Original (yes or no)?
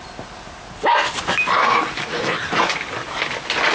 yes